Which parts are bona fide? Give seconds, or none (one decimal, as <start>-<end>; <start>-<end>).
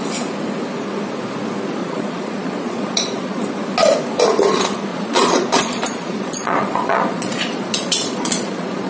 0.0-1.8; 3.5-4.9